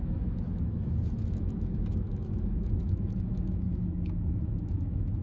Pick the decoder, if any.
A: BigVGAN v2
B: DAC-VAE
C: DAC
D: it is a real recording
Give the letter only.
B